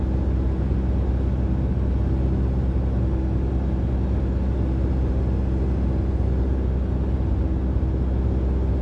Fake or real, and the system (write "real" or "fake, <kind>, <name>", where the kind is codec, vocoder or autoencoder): real